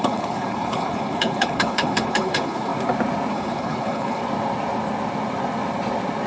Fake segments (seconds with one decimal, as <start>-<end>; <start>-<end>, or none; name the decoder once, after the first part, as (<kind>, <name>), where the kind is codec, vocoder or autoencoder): 0.0-2.7 (codec, HILCodec); 3.3-4.2